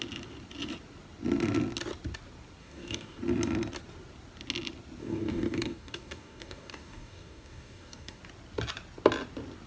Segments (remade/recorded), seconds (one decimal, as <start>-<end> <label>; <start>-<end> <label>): 0.0-2.6 recorded; 2.6-3.2 remade; 3.2-5.0 recorded; 5.0-8.2 remade; 8.2-9.7 recorded

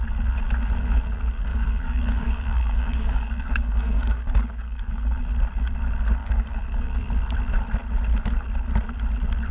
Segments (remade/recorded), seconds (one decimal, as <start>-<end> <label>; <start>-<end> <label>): 0.0-1.5 recorded; 1.5-5.2 remade; 5.2-6.2 recorded; 6.2-7.0 remade; 7.0-9.5 recorded

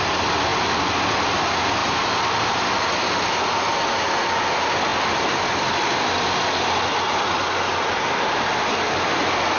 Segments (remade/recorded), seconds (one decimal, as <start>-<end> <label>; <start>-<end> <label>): 0.0-9.6 recorded

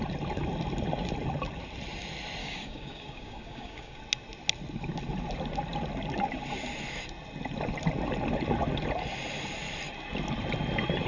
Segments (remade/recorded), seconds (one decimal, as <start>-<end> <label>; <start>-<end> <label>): 0.0-2.4 recorded; 2.4-4.0 remade; 4.0-11.1 recorded

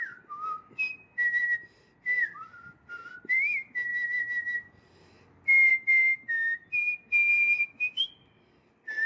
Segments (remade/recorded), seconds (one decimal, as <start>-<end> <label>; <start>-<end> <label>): 0.0-7.3 recorded; 7.3-8.0 remade; 8.0-9.1 recorded

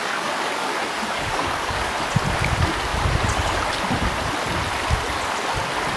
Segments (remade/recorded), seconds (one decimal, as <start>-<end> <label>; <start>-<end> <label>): 0.0-1.9 remade; 1.9-6.0 recorded

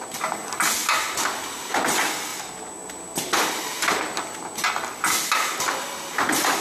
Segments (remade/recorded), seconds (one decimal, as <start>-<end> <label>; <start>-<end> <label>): 0.0-6.6 recorded

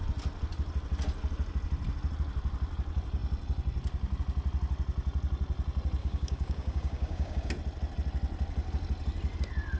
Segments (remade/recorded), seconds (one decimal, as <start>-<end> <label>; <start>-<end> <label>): 0.0-6.0 recorded; 6.0-7.5 remade; 7.5-9.8 recorded